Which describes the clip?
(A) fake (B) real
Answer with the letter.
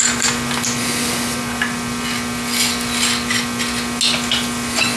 B